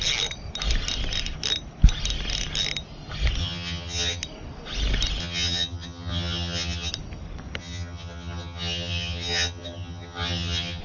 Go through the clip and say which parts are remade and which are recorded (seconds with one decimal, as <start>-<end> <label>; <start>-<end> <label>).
0.0-3.4 recorded; 3.4-4.2 remade; 4.2-5.2 recorded; 5.2-6.9 remade; 6.9-7.6 recorded; 7.6-10.8 remade